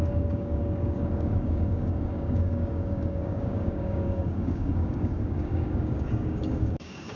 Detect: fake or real fake